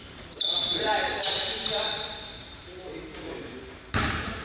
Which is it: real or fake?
fake